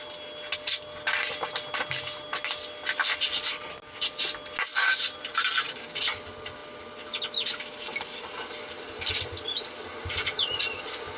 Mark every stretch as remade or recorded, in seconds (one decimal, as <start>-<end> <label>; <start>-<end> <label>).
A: 0.0-11.2 recorded